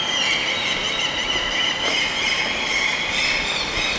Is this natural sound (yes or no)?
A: no